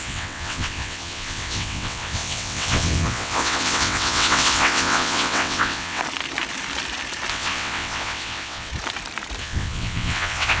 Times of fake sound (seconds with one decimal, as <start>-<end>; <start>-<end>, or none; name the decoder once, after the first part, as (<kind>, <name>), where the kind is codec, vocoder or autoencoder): 0.0-6.0 (vocoder, WaveNeXt); 7.3-8.7; 9.4-10.6

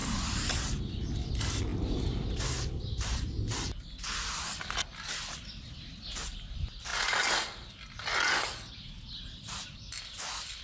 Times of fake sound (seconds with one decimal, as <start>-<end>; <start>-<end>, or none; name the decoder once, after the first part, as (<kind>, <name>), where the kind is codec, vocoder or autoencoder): none